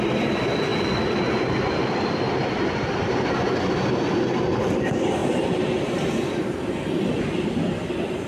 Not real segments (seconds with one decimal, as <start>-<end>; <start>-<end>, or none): none